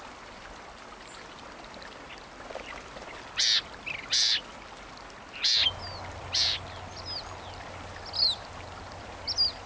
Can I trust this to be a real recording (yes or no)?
yes